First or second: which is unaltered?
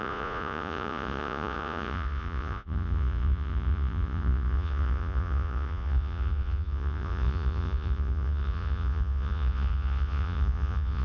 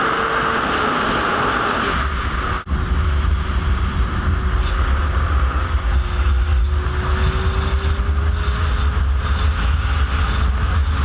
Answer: second